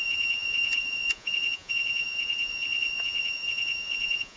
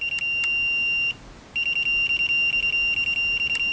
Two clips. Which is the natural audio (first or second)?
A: second